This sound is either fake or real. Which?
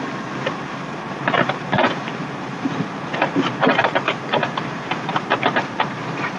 fake